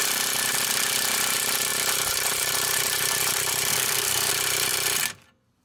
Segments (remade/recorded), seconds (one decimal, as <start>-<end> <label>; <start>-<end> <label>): 0.0-3.7 recorded; 3.7-4.3 remade; 4.3-5.6 recorded